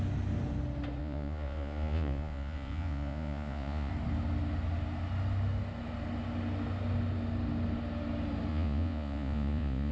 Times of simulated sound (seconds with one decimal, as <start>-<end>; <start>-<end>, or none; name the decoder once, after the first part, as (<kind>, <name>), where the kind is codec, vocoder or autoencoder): 1.0-3.9 (vocoder, Vocos); 8.5-9.9